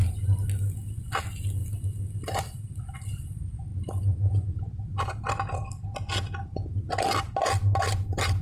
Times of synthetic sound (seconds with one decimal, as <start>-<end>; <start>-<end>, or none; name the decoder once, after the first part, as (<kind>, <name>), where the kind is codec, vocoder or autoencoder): 1.6-2.8 (vocoder, BigVGAN v2)